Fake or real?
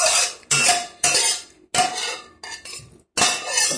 real